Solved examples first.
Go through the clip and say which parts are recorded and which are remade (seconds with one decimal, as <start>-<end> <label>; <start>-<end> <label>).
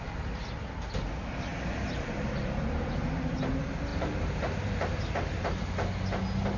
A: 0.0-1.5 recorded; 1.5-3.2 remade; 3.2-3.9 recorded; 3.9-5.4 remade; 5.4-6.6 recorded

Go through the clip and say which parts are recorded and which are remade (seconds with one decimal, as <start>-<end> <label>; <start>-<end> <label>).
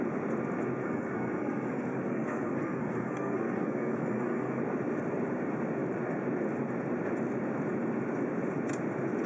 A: 0.0-0.8 recorded; 0.8-4.6 remade; 4.6-9.3 recorded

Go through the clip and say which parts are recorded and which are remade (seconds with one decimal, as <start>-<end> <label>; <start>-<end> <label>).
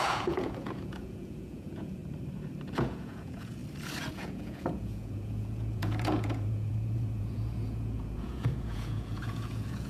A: 0.0-2.0 remade; 2.0-2.7 recorded; 2.7-3.6 remade; 3.6-4.1 recorded; 4.1-9.9 remade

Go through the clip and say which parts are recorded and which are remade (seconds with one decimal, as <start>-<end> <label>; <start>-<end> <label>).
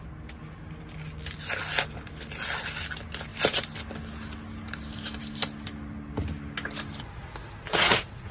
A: 0.0-7.7 recorded; 7.7-8.3 remade